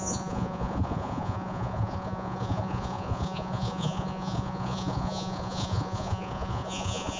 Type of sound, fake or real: fake